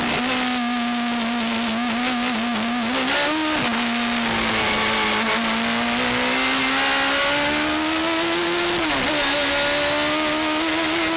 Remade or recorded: recorded